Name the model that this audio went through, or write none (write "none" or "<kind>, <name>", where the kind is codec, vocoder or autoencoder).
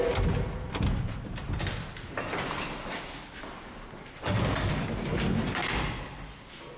none